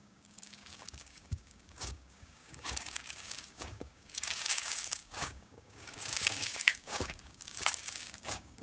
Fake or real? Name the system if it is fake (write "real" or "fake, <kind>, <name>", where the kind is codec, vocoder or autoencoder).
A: fake, codec, DAC